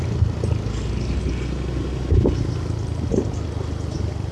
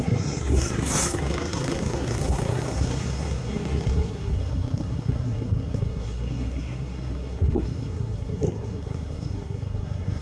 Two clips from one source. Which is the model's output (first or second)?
second